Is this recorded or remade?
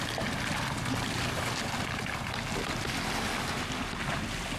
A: recorded